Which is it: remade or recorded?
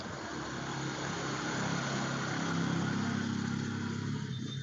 recorded